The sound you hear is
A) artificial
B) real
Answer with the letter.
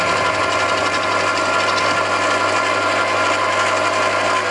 B